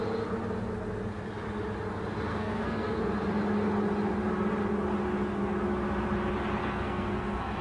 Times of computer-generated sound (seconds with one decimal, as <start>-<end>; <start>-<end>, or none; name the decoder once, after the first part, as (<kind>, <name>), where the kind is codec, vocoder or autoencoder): 2.3-3.0 (codec, SNAC); 6.6-7.6